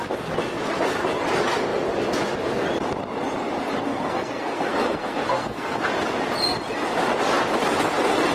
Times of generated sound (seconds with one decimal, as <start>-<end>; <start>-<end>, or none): 3.9-5.8